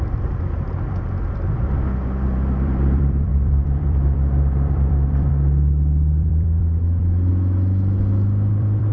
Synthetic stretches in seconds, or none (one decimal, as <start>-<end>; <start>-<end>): 0.0-7.3; 8.5-8.9